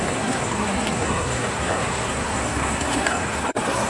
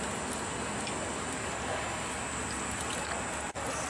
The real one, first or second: second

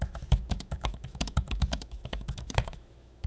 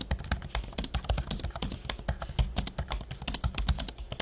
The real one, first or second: second